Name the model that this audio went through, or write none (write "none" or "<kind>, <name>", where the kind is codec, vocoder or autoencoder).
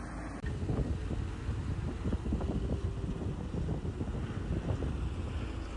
none